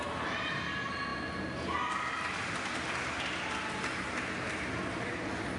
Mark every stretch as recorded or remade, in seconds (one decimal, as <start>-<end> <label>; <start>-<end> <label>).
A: 0.0-5.6 recorded

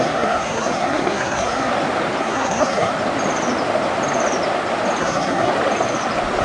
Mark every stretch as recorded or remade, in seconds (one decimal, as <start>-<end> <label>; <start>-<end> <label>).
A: 0.0-1.7 remade; 1.7-2.2 recorded; 2.2-2.9 remade; 2.9-5.0 recorded; 5.0-5.5 remade; 5.5-6.4 recorded

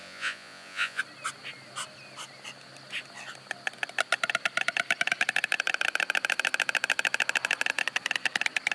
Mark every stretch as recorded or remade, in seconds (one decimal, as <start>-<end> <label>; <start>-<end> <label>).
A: 0.0-1.0 remade; 1.0-8.7 recorded

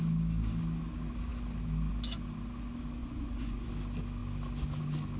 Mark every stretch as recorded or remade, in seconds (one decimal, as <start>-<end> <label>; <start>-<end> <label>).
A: 0.0-3.0 recorded; 3.0-3.7 remade; 3.7-5.2 recorded

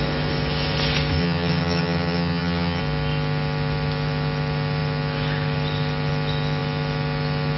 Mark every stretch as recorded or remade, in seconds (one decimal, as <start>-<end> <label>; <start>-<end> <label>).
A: 0.0-1.2 recorded; 1.2-2.8 remade; 2.8-7.6 recorded